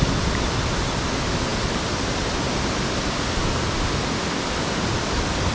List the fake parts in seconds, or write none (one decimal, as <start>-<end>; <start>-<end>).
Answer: none